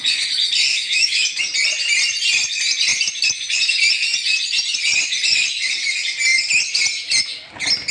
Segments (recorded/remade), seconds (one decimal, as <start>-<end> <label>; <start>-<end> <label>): 0.0-0.7 recorded; 0.7-1.4 remade; 1.4-7.9 recorded

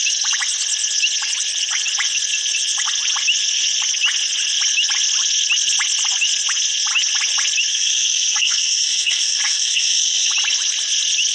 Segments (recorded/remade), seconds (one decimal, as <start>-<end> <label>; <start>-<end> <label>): 0.0-7.7 recorded; 7.7-10.3 remade; 10.3-11.3 recorded

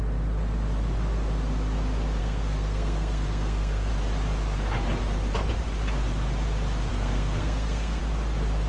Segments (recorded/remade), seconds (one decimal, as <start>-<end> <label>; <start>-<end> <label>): 0.0-2.2 recorded; 2.2-3.9 remade; 3.9-6.9 recorded; 6.9-8.0 remade; 8.0-8.7 recorded

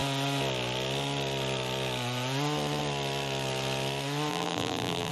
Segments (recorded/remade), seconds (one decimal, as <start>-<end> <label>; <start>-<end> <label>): 0.0-4.3 recorded; 4.3-5.1 remade

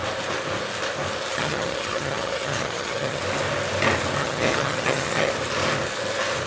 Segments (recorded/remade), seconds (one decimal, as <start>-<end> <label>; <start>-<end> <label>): 0.0-1.3 recorded; 1.3-3.2 remade; 3.2-4.2 recorded; 4.2-5.3 remade; 5.3-6.5 recorded